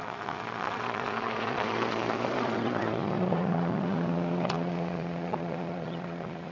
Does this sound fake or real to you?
fake